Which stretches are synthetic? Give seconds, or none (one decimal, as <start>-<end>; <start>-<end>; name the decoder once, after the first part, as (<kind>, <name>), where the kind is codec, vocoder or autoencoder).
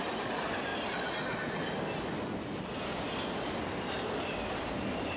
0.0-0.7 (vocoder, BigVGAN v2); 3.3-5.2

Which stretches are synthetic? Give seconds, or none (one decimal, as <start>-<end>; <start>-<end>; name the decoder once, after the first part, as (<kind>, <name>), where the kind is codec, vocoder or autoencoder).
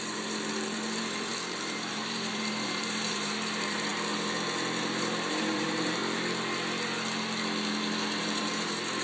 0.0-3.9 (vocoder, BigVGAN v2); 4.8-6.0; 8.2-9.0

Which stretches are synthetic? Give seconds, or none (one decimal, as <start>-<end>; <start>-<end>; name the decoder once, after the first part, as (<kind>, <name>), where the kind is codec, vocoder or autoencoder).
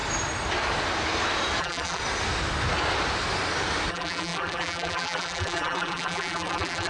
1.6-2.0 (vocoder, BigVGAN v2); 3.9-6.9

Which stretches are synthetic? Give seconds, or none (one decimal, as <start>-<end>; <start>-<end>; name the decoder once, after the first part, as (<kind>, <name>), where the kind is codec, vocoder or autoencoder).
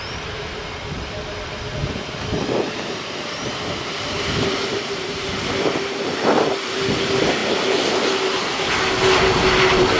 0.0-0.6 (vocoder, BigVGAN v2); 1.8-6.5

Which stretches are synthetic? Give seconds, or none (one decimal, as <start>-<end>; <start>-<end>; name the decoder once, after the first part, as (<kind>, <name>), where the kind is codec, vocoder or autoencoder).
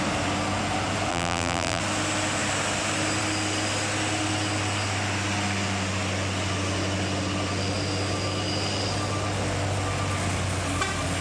1.1-1.8 (vocoder, BigVGAN v2)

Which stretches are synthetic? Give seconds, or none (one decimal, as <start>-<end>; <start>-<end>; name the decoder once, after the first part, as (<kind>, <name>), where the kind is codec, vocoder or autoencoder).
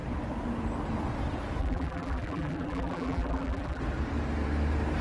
1.6-3.8 (vocoder, BigVGAN v2)